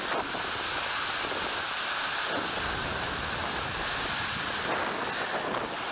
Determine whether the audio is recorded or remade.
recorded